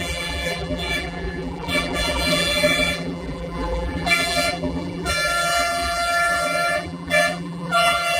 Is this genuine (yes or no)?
no